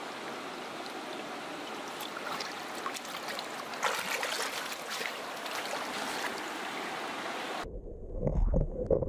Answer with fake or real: real